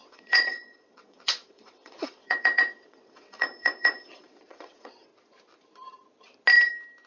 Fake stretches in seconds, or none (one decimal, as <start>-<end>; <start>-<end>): 0.0-5.1